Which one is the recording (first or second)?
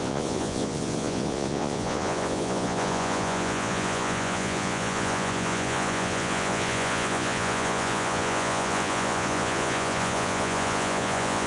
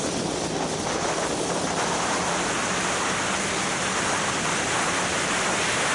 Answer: second